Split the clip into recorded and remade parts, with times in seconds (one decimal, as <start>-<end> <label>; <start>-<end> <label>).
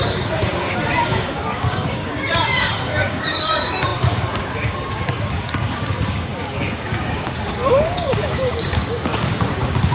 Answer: 0.0-9.9 remade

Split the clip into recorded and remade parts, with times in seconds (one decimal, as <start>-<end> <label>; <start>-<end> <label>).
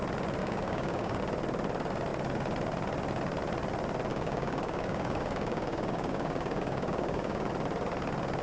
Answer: 0.0-0.4 recorded; 0.4-1.2 remade; 1.2-4.1 recorded; 4.1-7.5 remade; 7.5-8.4 recorded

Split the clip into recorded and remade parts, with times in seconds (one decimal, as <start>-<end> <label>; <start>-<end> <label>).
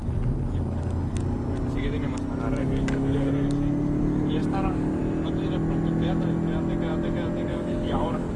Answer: 0.0-2.6 recorded; 2.6-3.3 remade; 3.3-4.4 recorded; 4.4-5.0 remade; 5.0-7.5 recorded; 7.5-8.4 remade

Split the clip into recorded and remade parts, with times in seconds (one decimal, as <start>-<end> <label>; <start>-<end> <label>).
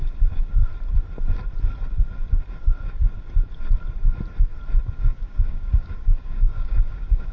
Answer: 0.0-0.6 remade; 0.6-5.0 recorded; 5.0-7.3 remade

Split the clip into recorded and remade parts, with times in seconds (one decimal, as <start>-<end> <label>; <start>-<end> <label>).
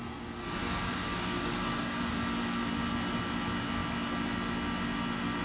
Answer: 0.0-0.6 recorded; 0.6-2.0 remade; 2.0-5.4 recorded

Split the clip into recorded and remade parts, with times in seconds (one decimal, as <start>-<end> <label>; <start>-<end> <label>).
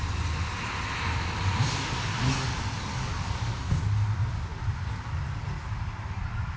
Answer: 0.0-2.9 recorded; 2.9-3.8 remade; 3.8-6.6 recorded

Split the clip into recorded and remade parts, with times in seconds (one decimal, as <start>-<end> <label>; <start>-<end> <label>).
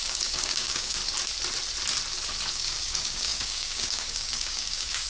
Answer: 0.0-1.0 remade; 1.0-2.5 recorded; 2.5-5.1 remade